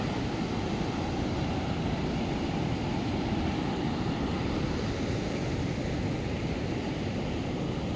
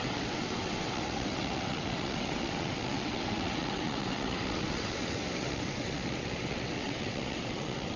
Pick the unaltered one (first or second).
first